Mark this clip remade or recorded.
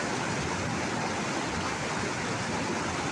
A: recorded